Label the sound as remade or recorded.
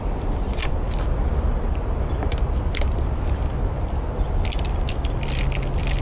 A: recorded